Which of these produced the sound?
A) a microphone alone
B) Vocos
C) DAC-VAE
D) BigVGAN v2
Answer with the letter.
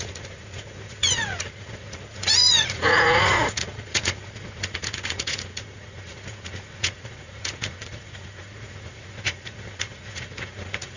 B